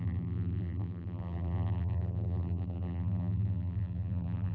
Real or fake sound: fake